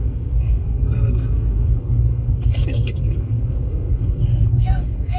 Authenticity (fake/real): fake